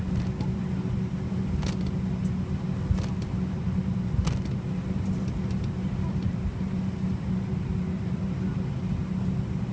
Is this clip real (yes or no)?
yes